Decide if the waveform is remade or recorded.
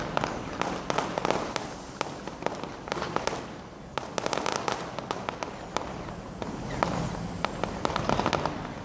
recorded